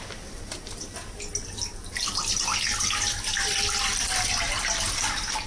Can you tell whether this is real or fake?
real